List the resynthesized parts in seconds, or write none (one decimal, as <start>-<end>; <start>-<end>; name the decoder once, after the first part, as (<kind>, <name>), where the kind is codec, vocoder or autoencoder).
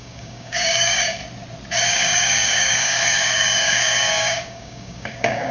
0.0-1.2 (codec, DAC); 1.8-5.5